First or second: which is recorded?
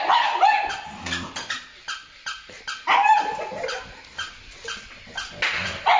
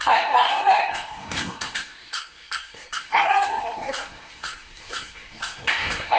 first